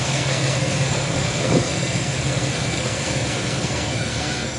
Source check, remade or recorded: remade